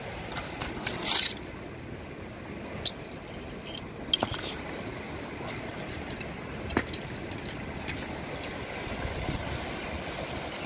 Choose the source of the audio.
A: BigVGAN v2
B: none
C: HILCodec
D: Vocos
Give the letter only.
B